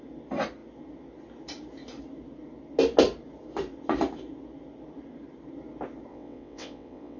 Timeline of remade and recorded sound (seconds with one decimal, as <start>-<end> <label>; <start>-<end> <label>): 0.0-6.1 recorded; 6.1-7.2 remade

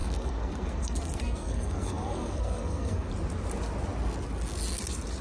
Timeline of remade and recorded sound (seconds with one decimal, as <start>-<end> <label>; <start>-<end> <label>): 0.0-3.1 remade; 3.1-5.2 recorded

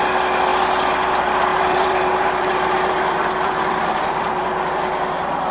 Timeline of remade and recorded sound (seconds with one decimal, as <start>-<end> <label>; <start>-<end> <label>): 0.0-1.5 recorded; 1.5-4.7 remade; 4.7-5.5 recorded

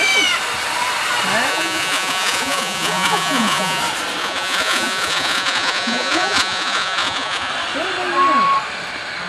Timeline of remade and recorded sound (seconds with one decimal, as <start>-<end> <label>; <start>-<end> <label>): 0.0-1.5 recorded; 1.5-3.8 remade; 3.8-4.2 recorded; 4.2-7.5 remade; 7.5-9.3 recorded